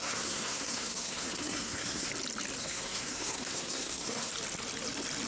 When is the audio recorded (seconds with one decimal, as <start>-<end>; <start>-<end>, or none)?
2.1-2.6; 4.3-5.3